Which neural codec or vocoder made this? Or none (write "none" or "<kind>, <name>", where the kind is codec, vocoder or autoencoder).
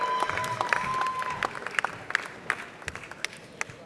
none